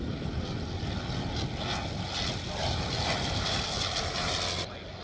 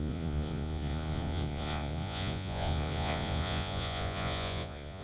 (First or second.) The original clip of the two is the first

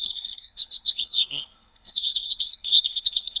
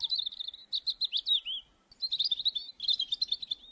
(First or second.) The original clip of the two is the second